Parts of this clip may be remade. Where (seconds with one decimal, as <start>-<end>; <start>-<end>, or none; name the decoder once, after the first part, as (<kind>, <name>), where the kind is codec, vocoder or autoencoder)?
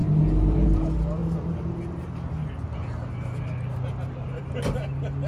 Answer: none